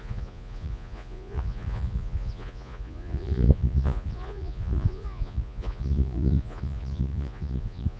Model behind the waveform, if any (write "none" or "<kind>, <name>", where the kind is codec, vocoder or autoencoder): vocoder, Vocos